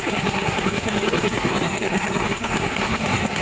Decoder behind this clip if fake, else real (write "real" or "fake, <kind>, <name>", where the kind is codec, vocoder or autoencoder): fake, codec, SNAC